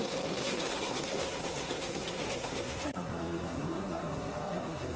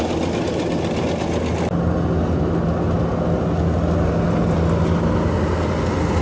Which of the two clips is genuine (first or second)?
second